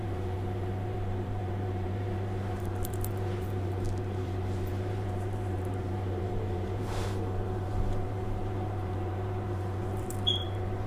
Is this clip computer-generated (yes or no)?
yes